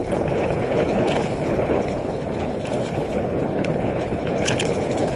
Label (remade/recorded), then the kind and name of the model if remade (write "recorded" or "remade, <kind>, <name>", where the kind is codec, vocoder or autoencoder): remade, codec, HILCodec